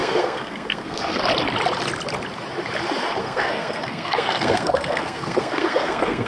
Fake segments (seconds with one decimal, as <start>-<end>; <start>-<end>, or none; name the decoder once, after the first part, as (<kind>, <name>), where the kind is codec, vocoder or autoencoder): 0.0-1.2 (codec, SNAC); 3.2-6.3